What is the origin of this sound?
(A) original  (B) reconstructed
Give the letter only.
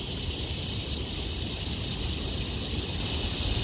A